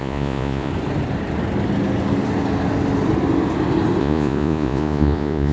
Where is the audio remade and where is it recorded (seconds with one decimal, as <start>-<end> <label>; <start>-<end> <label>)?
0.0-0.7 remade; 0.7-4.0 recorded; 4.0-5.5 remade